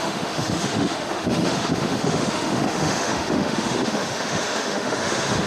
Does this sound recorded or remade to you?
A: remade